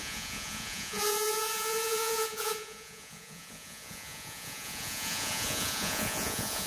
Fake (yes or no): yes